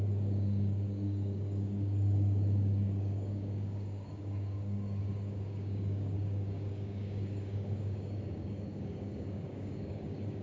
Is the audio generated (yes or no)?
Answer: yes